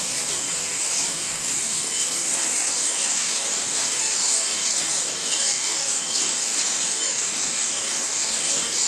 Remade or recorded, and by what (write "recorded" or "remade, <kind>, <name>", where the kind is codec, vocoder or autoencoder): remade, codec, DAC